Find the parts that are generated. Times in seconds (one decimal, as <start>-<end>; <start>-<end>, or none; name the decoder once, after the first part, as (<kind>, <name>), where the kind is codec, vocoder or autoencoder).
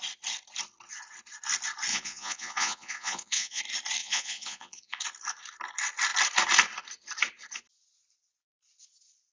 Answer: 1.9-3.6 (vocoder, Vocos); 4.0-5.0